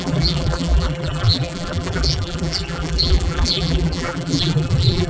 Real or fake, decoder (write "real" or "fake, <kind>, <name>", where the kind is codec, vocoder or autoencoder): fake, vocoder, BigVGAN v2